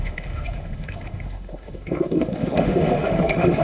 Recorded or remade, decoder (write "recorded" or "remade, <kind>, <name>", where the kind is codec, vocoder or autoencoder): remade, autoencoder, DAC-VAE